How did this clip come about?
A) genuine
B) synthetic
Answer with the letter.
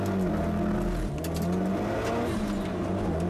A